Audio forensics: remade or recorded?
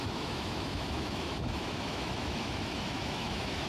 remade